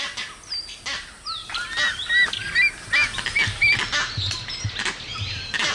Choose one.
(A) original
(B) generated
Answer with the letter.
A